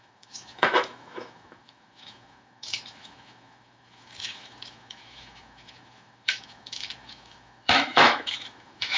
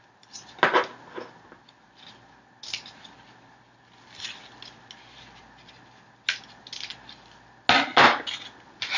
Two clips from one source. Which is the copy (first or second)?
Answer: first